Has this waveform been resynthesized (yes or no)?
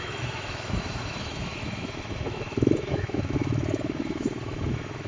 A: yes